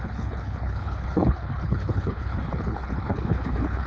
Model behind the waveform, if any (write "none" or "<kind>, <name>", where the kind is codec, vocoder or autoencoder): codec, HILCodec